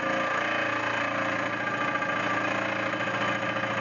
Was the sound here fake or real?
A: real